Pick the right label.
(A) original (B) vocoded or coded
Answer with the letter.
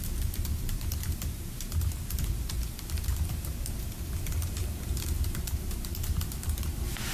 B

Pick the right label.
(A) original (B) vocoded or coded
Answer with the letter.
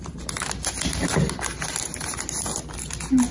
A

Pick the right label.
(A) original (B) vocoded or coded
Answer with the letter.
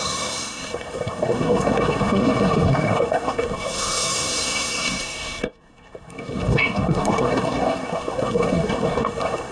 B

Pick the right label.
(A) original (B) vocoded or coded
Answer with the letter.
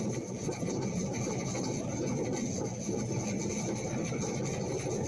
A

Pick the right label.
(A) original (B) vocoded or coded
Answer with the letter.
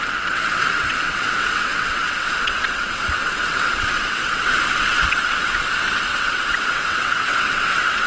B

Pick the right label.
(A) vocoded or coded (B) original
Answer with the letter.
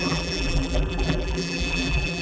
A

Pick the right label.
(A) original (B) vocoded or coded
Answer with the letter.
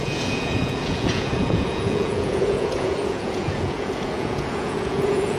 B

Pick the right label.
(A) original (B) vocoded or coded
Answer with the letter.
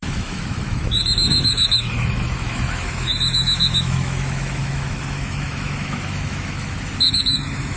B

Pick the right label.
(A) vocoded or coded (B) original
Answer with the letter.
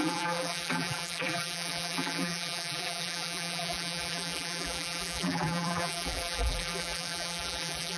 A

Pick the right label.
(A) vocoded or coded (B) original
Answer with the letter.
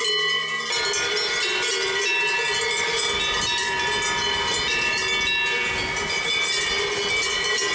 B